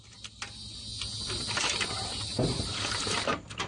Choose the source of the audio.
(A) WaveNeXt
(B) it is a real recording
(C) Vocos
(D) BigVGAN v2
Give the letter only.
B